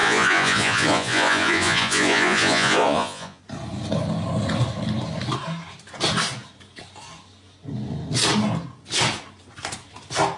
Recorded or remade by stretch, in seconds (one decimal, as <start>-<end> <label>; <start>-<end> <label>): 0.0-3.4 remade; 3.4-10.4 recorded